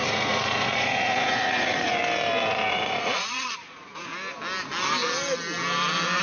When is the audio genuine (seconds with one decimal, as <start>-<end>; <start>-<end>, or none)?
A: 2.0-2.7; 4.1-6.2